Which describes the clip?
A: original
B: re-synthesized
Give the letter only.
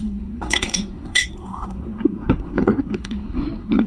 B